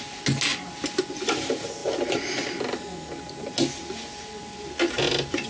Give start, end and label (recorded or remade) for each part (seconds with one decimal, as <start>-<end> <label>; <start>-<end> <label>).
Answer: 0.0-5.5 recorded

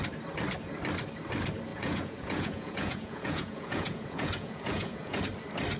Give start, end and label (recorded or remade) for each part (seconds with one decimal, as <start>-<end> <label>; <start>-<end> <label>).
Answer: 0.0-1.7 recorded; 1.7-5.2 remade; 5.2-5.8 recorded

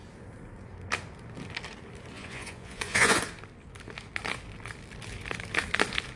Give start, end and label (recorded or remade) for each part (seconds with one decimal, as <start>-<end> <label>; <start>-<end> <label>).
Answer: 0.0-2.1 recorded; 2.1-3.2 remade; 3.2-6.2 recorded

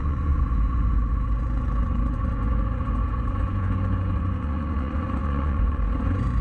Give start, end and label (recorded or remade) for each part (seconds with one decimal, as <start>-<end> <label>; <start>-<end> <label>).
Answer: 0.0-6.4 remade

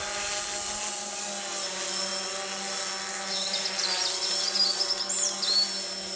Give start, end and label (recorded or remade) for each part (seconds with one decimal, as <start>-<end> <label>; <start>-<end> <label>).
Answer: 0.0-6.2 recorded